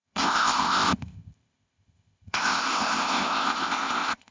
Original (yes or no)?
no